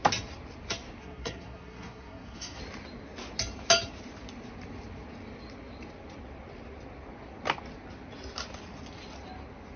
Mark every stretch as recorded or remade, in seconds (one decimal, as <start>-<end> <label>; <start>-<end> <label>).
0.0-1.0 recorded; 1.0-2.6 remade; 2.6-9.8 recorded